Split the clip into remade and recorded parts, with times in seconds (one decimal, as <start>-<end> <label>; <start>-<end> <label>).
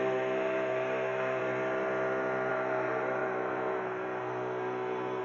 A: 0.0-1.4 remade; 1.4-2.5 recorded; 2.5-5.2 remade